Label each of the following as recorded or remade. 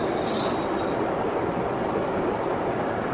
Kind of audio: recorded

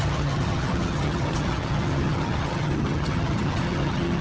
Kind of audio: remade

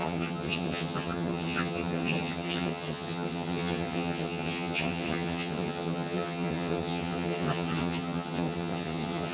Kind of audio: remade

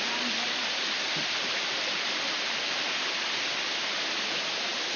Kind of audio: recorded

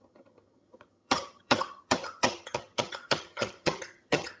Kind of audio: remade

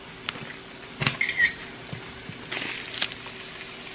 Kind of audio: recorded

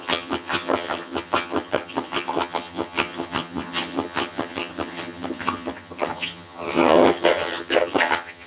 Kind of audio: remade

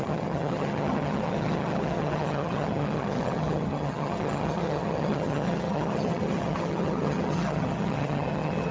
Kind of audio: remade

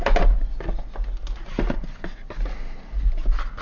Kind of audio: recorded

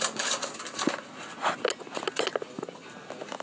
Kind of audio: recorded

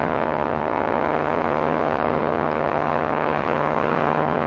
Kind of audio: remade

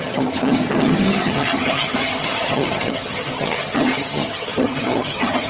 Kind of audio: remade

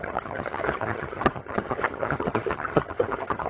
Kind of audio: remade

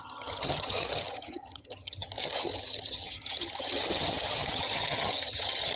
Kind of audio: remade